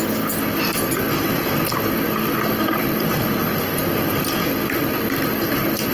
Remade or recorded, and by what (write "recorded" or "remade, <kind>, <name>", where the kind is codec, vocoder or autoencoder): recorded